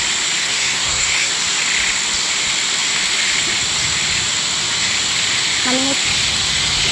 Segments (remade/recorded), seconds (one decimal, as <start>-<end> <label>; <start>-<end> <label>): 0.0-0.4 recorded; 0.4-1.3 remade; 1.3-6.9 recorded